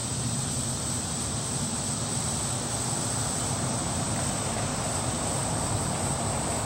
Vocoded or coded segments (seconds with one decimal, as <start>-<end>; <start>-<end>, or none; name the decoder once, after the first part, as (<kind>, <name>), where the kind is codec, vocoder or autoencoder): 0.0-1.9 (vocoder, BigVGAN v2); 3.8-4.8; 5.4-6.6